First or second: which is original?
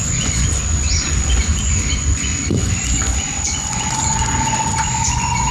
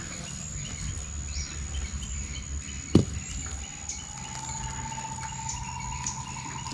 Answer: second